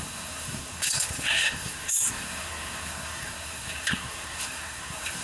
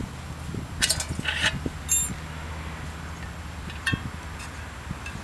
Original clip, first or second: second